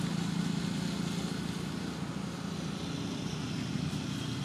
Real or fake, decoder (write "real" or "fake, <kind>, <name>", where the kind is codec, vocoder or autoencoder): real